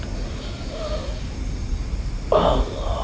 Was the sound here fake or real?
real